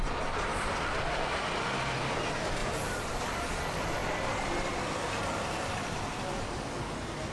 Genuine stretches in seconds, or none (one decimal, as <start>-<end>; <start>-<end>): 0.0-0.5; 1.4-2.6; 3.2-7.3